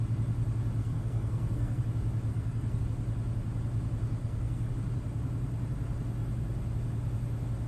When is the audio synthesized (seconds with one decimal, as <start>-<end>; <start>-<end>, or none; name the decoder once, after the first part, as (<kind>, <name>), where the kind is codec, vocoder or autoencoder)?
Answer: 0.8-1.8 (codec, SNAC); 2.3-2.8; 4.2-4.7